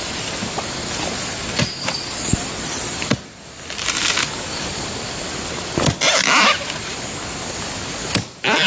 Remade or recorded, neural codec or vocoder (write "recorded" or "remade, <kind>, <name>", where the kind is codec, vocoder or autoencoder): recorded